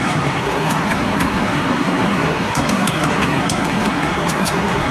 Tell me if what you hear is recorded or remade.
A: remade